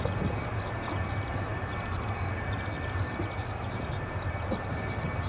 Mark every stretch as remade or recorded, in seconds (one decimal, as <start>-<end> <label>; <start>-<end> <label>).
0.0-1.5 recorded; 1.5-4.7 remade; 4.7-5.3 recorded